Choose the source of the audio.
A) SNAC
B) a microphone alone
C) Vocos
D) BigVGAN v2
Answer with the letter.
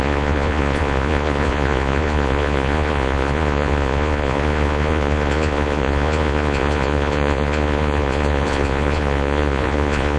C